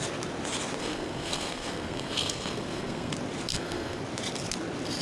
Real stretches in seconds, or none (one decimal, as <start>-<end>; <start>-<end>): 0.0-0.8; 3.1-3.5; 4.0-5.0